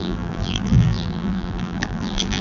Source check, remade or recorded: remade